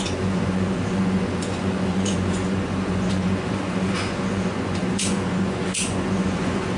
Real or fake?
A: fake